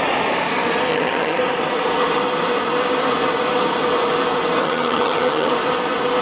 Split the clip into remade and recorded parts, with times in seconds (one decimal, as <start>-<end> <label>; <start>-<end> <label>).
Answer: 0.0-0.9 recorded; 0.9-1.4 remade; 1.4-4.6 recorded; 4.6-5.5 remade; 5.5-6.2 recorded

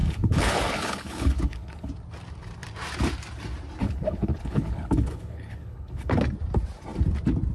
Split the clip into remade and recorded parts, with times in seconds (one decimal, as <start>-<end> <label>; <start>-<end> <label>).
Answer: 0.0-1.9 remade; 1.9-3.8 recorded; 3.8-6.2 remade; 6.2-7.5 recorded